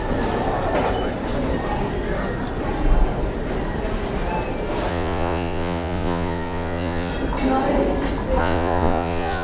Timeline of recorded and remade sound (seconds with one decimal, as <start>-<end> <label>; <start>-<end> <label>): 0.0-4.9 recorded; 4.9-7.1 remade; 7.1-8.4 recorded; 8.4-9.4 remade